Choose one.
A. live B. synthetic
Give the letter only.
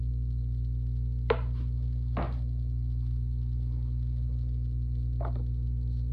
A